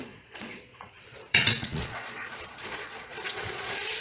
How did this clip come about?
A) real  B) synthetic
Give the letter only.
B